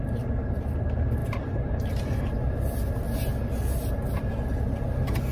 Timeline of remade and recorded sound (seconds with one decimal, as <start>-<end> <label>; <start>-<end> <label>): 0.0-1.2 recorded; 1.2-2.2 remade; 2.2-5.3 recorded